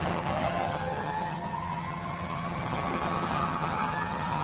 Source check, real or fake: fake